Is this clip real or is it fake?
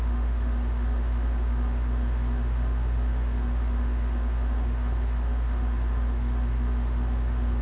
fake